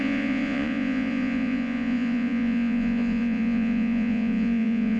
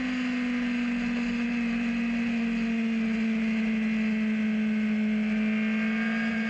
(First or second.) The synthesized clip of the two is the first